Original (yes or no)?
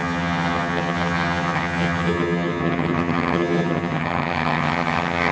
no